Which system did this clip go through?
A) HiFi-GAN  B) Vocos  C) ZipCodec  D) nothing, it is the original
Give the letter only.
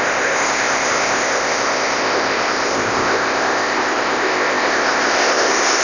C